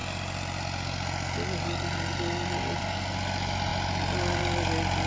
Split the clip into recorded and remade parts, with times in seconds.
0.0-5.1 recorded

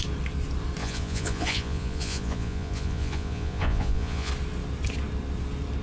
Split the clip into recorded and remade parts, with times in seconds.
0.0-0.8 recorded; 0.8-4.3 remade; 4.3-5.8 recorded

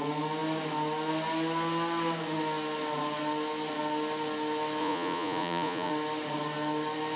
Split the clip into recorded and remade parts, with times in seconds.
0.0-4.8 recorded; 4.8-5.9 remade; 5.9-7.2 recorded

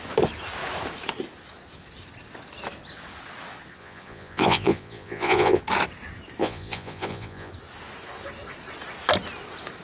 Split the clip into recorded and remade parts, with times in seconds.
0.0-3.8 recorded; 3.8-5.6 remade; 5.6-6.4 recorded; 6.4-7.5 remade; 7.5-9.8 recorded